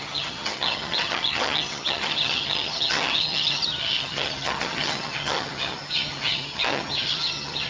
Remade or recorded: remade